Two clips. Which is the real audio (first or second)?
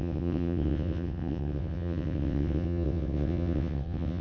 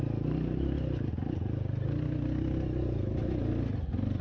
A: second